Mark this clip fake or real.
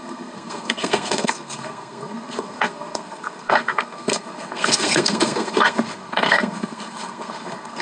fake